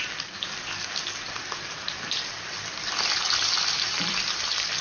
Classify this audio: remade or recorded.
recorded